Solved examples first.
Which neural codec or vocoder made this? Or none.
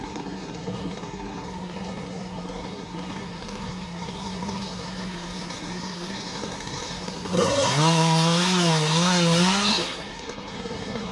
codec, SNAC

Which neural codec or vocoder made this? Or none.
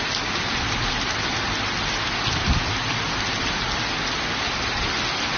none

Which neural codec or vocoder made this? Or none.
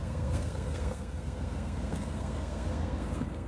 codec, SNAC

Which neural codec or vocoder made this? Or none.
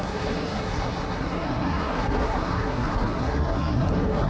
codec, SNAC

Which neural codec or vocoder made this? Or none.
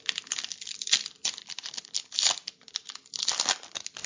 none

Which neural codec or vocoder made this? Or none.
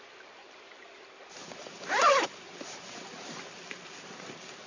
none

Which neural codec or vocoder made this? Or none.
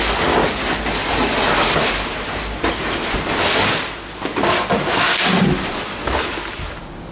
none